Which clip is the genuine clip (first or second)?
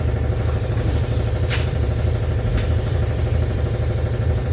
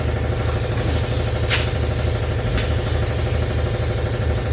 second